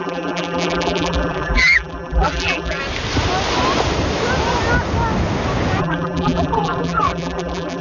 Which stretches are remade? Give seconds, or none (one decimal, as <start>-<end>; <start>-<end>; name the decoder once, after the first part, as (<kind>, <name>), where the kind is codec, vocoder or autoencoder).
0.0-2.8 (vocoder, BigVGAN v2); 5.8-7.8